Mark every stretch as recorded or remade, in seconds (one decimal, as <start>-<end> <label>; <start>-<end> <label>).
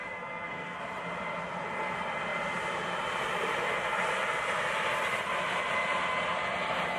0.0-0.8 remade; 0.8-7.0 recorded